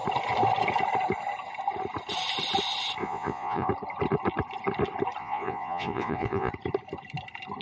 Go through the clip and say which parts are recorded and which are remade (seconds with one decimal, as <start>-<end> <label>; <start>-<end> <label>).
0.0-3.0 recorded; 3.0-3.7 remade; 3.7-5.2 recorded; 5.2-6.5 remade; 6.5-7.6 recorded